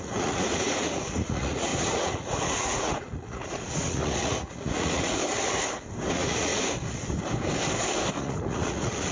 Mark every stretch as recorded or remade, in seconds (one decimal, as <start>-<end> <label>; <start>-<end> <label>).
0.0-5.2 remade; 5.2-6.1 recorded; 6.1-6.5 remade; 6.5-8.1 recorded; 8.1-9.1 remade